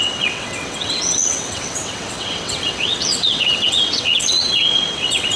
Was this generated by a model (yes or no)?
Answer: yes